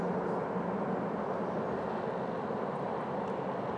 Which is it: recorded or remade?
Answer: recorded